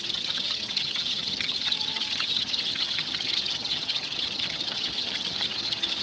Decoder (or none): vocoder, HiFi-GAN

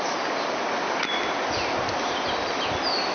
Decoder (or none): none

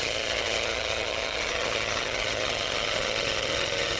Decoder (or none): vocoder, HiFi-GAN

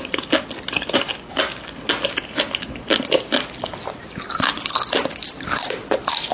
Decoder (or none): none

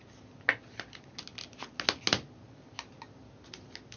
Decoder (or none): none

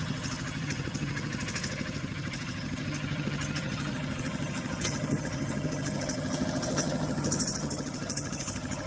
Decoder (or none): vocoder, HiFi-GAN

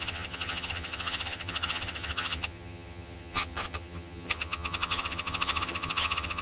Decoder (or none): vocoder, HiFi-GAN